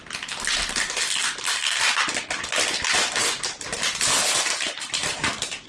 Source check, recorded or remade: recorded